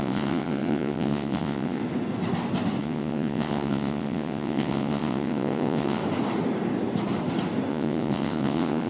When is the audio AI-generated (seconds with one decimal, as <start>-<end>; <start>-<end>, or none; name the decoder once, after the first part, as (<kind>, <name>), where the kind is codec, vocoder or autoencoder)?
0.0-1.8 (vocoder, WaveNeXt); 2.8-6.0; 7.7-8.9